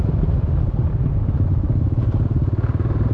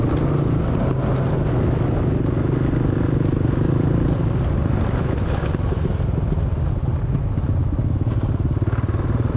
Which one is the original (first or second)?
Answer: second